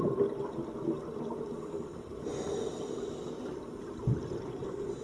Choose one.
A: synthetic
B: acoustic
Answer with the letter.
B